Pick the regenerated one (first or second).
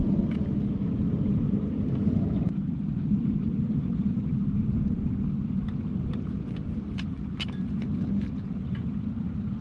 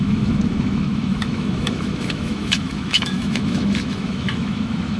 second